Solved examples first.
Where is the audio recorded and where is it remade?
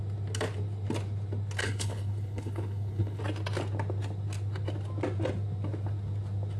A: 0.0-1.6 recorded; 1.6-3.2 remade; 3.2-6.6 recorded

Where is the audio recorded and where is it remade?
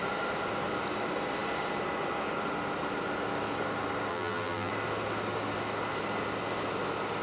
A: 0.0-4.1 recorded; 4.1-4.7 remade; 4.7-7.2 recorded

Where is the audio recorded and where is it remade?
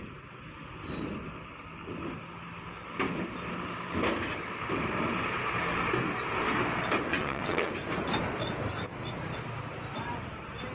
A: 0.0-7.1 recorded; 7.1-7.7 remade; 7.7-10.7 recorded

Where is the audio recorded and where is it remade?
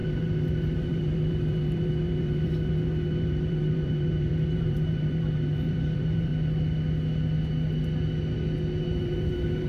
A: 0.0-6.3 remade; 6.3-8.8 recorded; 8.8-9.7 remade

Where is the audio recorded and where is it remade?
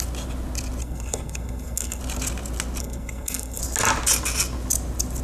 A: 0.0-0.8 recorded; 0.8-2.0 remade; 2.0-2.8 recorded; 2.8-3.6 remade; 3.6-5.2 recorded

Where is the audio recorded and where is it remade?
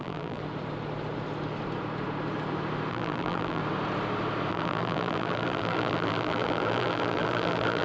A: 0.0-0.4 remade; 0.4-2.9 recorded; 2.9-3.6 remade; 3.6-4.5 recorded; 4.5-7.8 remade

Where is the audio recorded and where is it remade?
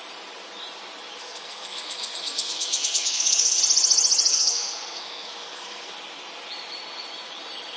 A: 0.0-1.2 recorded; 1.2-3.6 remade; 3.6-4.3 recorded; 4.3-5.9 remade; 5.9-7.8 recorded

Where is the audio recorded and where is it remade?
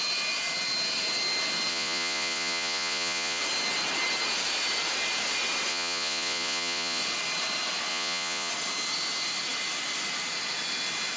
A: 0.0-1.7 recorded; 1.7-3.4 remade; 3.4-5.7 recorded; 5.7-7.0 remade; 7.0-7.9 recorded; 7.9-8.5 remade; 8.5-11.2 recorded